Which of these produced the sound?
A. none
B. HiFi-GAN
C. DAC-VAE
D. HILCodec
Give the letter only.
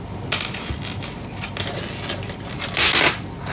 A